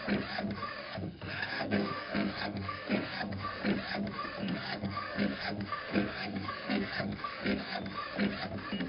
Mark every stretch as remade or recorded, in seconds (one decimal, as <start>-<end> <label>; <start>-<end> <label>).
0.0-0.8 recorded; 0.8-3.6 remade; 3.6-4.4 recorded; 4.4-7.8 remade; 7.8-8.9 recorded